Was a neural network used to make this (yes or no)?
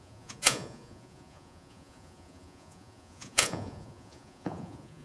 yes